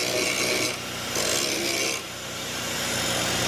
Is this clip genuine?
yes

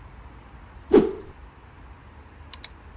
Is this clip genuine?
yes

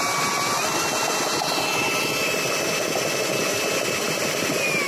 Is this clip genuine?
yes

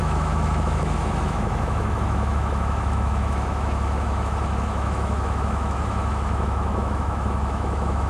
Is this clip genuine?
no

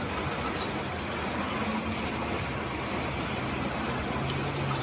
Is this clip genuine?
yes